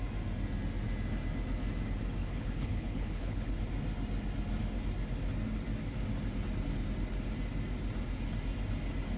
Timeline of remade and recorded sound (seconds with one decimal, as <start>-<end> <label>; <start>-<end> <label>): 0.0-2.2 recorded; 2.2-3.6 remade; 3.6-9.2 recorded